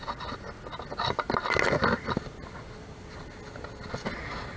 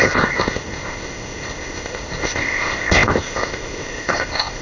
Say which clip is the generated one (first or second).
second